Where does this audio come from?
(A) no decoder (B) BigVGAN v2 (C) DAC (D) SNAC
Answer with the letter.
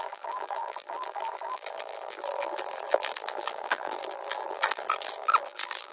B